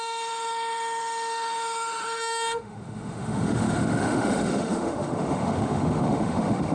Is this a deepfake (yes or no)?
yes